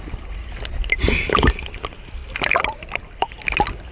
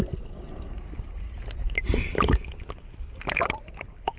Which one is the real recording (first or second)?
first